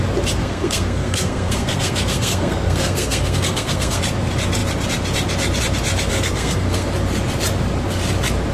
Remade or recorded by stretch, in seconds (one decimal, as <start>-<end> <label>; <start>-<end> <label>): 0.0-0.4 recorded; 0.4-4.0 remade; 4.0-6.1 recorded; 6.1-6.9 remade; 6.9-8.5 recorded

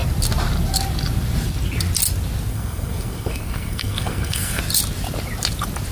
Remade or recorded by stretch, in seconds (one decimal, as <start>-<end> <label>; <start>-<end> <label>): 0.0-2.5 recorded; 2.5-4.6 remade; 4.6-5.9 recorded

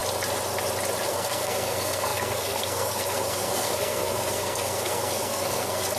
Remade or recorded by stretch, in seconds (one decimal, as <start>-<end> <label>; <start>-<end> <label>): 0.0-1.1 recorded; 1.1-6.0 remade